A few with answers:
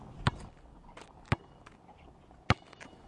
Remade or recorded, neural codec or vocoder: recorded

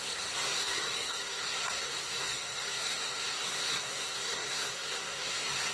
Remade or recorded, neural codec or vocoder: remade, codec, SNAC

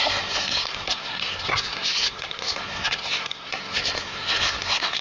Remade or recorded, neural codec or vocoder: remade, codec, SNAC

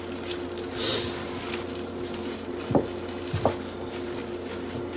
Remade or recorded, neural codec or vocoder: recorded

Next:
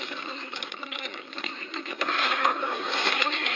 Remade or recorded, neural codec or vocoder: remade, codec, SNAC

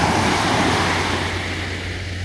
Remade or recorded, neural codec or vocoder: recorded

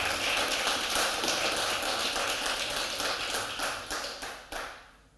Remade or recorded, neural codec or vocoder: recorded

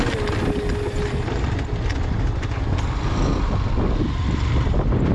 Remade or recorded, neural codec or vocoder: recorded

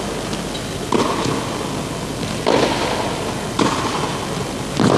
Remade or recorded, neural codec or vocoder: recorded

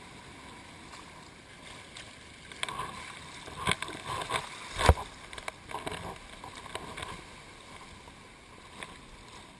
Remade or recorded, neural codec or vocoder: recorded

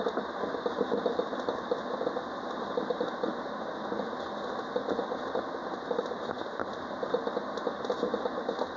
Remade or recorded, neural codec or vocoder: recorded